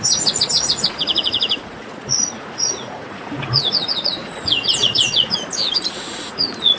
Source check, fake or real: fake